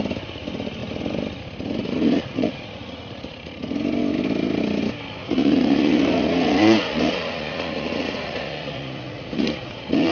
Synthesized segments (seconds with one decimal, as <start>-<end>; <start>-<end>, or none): 1.8-3.6; 5.2-10.1